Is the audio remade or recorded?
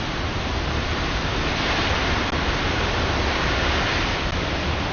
recorded